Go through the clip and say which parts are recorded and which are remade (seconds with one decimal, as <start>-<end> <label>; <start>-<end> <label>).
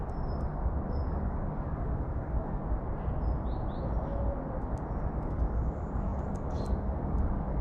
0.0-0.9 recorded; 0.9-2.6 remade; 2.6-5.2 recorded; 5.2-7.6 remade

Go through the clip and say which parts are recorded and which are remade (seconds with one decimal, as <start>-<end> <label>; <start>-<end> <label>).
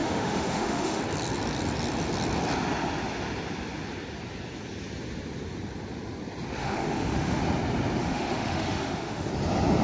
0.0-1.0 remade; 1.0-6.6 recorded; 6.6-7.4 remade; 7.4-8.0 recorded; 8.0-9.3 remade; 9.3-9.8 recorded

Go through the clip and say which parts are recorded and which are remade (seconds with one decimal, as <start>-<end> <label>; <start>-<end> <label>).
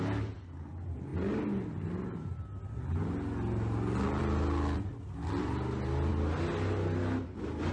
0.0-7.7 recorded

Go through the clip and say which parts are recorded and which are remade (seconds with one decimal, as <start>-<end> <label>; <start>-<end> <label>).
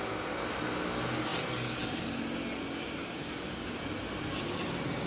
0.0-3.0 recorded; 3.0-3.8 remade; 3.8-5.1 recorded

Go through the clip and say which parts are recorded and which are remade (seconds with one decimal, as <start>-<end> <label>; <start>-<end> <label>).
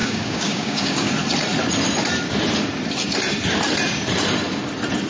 0.0-1.1 remade; 1.1-5.1 recorded